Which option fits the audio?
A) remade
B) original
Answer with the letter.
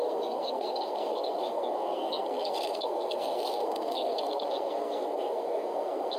A